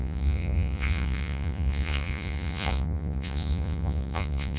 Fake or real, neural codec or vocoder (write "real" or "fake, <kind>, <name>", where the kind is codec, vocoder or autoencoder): fake, vocoder, Vocos